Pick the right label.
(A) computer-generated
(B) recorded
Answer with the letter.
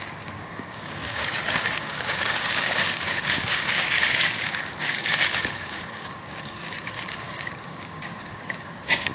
A